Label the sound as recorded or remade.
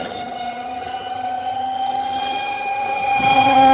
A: remade